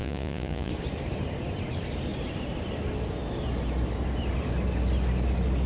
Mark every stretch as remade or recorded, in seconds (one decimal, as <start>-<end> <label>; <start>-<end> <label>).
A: 0.0-0.7 remade; 0.7-5.7 recorded